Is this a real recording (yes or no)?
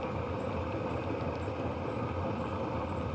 yes